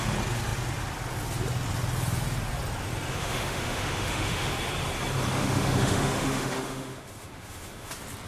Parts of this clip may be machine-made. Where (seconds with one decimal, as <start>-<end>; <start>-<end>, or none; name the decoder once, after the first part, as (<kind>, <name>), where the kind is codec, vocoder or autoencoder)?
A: 3.1-4.5 (autoencoder, DAC-VAE); 5.3-7.9